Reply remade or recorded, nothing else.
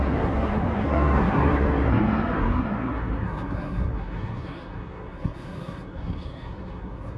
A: remade